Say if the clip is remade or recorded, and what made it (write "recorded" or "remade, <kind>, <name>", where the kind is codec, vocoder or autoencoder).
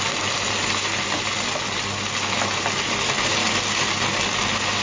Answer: recorded